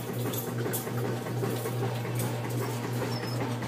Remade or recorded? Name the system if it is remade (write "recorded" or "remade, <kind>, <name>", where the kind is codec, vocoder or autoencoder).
recorded